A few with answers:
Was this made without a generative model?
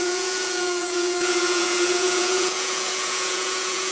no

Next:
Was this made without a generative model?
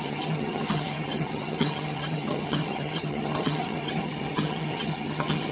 no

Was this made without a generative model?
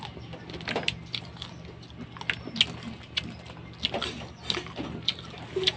yes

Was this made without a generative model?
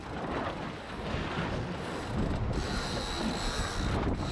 yes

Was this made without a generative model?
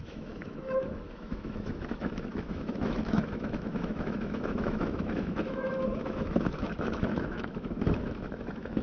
no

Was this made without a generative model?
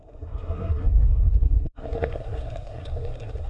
no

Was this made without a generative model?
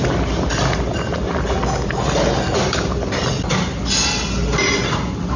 yes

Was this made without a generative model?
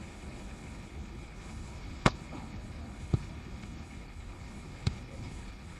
no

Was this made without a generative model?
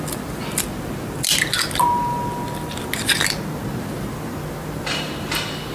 yes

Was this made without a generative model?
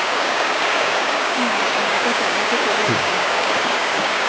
no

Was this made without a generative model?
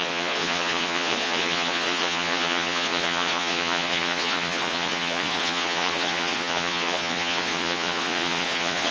no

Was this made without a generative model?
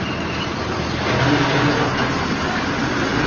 yes